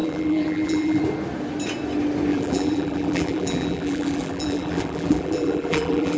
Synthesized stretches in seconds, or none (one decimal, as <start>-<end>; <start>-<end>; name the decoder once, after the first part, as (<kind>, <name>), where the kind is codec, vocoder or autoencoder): 0.0-1.0 (vocoder, BigVGAN v2); 2.3-6.2